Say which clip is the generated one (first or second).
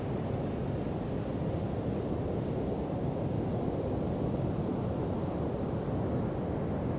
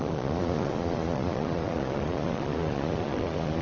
second